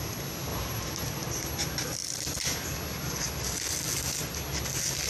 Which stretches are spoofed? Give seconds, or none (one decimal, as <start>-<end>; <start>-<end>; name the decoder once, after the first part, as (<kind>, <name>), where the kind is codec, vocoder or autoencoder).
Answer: 0.5-1.6 (vocoder, BigVGAN v2)